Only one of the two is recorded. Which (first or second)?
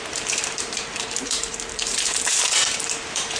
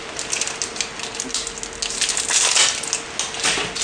second